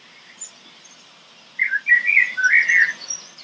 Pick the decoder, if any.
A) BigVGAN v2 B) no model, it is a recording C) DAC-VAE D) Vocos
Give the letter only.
B